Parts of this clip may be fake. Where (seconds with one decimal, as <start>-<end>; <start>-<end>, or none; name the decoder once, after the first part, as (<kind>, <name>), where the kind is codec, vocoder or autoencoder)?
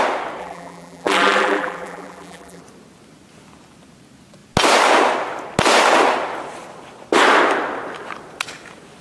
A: 0.4-2.6 (vocoder, BigVGAN v2)